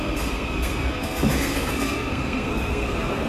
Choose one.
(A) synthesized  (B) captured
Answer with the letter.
A